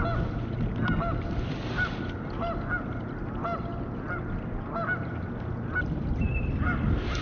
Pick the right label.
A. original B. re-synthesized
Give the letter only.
A